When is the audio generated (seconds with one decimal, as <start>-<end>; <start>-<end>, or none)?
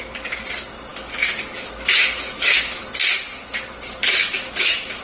0.9-2.8; 4.2-5.0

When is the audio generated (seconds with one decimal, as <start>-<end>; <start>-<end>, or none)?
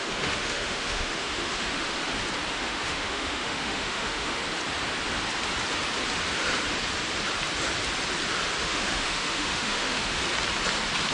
0.0-2.0; 2.5-4.4; 8.6-10.2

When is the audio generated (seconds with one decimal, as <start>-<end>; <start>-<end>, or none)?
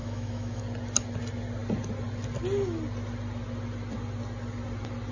0.0-0.6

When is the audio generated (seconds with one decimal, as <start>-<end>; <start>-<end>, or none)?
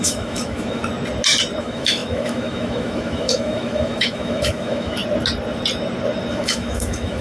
0.0-0.8; 1.6-5.0; 6.3-7.2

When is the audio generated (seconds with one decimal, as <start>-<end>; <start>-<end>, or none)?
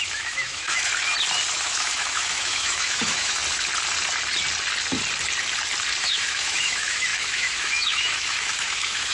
0.0-0.9; 1.5-3.4; 6.0-9.1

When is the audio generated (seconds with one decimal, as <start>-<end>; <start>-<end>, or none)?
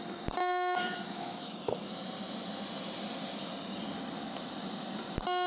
0.4-1.6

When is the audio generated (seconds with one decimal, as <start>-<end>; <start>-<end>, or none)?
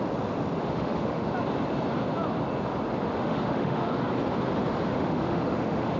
0.6-1.3; 3.2-4.0; 4.9-6.0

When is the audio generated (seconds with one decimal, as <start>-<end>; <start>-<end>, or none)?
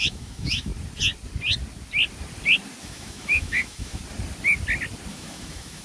0.0-0.7; 2.8-4.0; 5.1-5.8